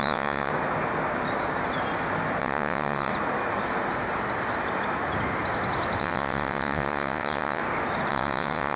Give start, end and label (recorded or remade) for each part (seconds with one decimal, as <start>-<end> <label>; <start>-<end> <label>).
0.0-0.5 remade; 0.5-2.4 recorded; 2.4-3.1 remade; 3.1-6.0 recorded; 6.0-7.6 remade; 7.6-8.1 recorded; 8.1-8.8 remade